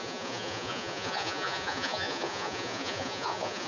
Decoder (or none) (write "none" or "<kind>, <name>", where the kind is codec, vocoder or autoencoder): vocoder, Vocos